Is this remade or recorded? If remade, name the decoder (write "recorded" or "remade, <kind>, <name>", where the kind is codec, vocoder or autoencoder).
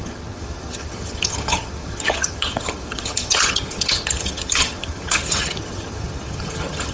remade, vocoder, HiFi-GAN